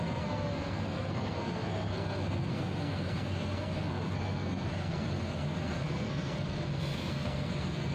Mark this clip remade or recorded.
remade